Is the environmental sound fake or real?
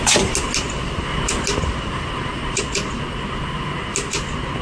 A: real